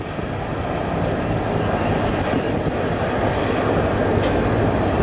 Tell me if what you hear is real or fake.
real